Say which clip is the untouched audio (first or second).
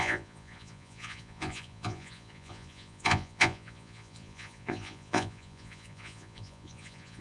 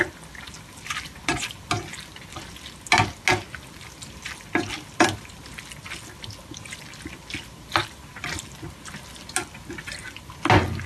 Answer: second